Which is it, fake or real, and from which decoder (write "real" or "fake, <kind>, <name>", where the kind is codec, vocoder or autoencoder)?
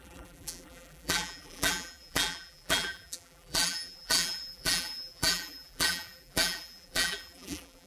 fake, vocoder, BigVGAN v2